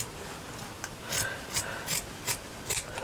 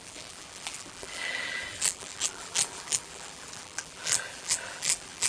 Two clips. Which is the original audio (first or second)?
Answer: first